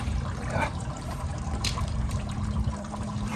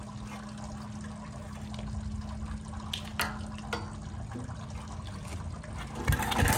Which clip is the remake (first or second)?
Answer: first